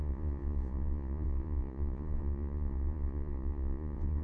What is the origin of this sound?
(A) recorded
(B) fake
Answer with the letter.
B